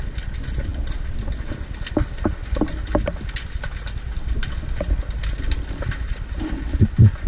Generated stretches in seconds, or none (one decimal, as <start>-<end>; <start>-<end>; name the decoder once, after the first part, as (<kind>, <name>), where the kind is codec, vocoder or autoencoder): none